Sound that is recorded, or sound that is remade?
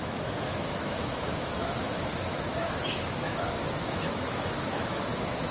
remade